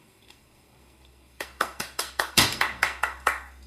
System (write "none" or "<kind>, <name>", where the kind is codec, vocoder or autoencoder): codec, SNAC